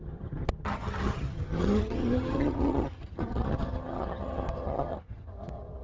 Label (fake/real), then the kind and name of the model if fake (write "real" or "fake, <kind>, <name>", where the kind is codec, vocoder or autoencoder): fake, vocoder, HiFi-GAN